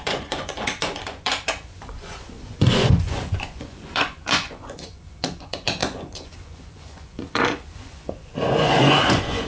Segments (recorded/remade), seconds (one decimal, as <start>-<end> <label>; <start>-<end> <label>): 0.0-9.5 remade